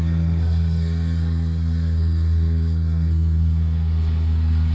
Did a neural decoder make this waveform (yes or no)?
yes